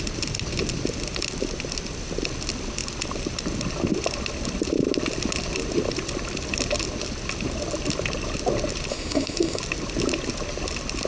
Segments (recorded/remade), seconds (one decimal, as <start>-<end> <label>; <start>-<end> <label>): 0.0-8.9 recorded; 8.9-9.6 remade; 9.6-11.1 recorded